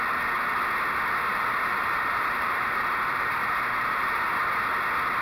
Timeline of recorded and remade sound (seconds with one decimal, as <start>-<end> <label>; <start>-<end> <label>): 0.0-1.3 recorded; 1.3-4.4 remade; 4.4-5.2 recorded